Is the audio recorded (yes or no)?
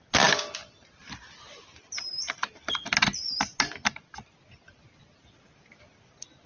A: yes